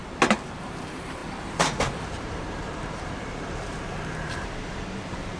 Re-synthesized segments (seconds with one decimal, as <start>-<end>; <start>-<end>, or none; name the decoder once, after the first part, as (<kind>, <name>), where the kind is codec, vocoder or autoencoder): 0.6-5.4 (vocoder, BigVGAN v2)

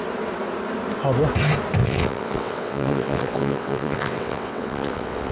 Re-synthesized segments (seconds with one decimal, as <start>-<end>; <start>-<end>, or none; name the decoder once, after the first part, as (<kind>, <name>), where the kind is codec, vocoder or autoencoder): 1.8-5.3 (vocoder, WaveNeXt)

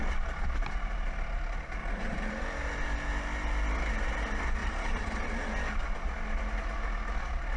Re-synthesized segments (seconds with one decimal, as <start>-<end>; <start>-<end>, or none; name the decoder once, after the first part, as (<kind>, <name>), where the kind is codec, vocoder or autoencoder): 1.8-2.3 (vocoder, Vocos); 4.6-5.5

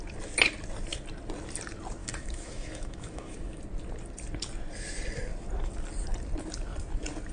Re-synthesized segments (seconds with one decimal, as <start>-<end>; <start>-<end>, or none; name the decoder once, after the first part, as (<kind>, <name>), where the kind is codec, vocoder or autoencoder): 2.0-3.6 (autoencoder, DAC-VAE)

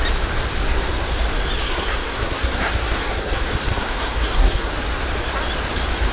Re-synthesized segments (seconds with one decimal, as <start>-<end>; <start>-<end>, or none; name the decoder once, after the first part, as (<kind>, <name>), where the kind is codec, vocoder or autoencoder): 1.6-4.7 (codec, SNAC)

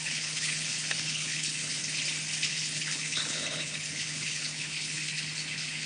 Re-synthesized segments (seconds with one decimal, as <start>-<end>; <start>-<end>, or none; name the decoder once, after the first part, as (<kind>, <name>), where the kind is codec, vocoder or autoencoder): 0.0-1.8 (codec, HILCodec); 2.5-5.9

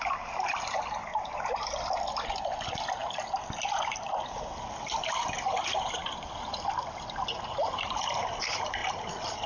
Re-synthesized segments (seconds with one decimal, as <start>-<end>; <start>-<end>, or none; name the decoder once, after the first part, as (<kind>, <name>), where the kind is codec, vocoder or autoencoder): none

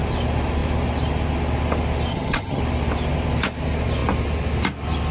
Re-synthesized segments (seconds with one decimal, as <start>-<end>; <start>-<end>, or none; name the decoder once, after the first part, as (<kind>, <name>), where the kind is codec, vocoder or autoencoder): 2.1-2.6 (vocoder, HiFi-GAN)